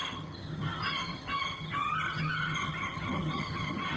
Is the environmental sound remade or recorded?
remade